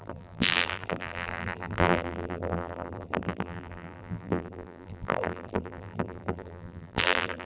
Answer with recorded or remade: remade